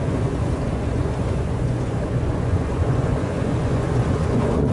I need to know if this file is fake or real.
fake